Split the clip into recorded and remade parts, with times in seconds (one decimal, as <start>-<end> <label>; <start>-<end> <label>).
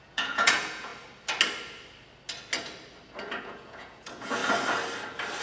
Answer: 0.0-0.9 remade; 0.9-3.4 recorded; 3.4-4.4 remade; 4.4-5.4 recorded